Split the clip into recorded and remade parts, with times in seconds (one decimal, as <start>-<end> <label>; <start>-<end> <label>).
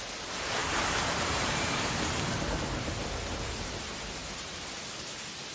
0.0-0.6 recorded; 0.6-3.7 remade; 3.7-5.5 recorded